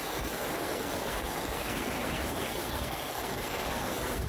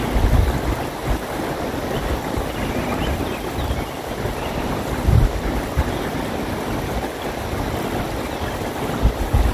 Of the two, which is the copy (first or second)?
first